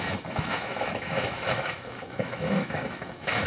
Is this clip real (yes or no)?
no